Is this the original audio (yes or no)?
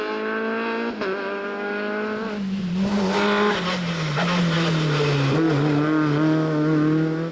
yes